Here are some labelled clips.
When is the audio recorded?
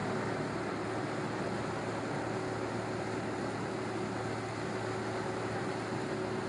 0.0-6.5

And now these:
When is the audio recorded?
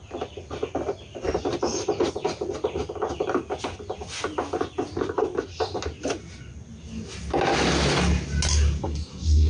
0.0-8.8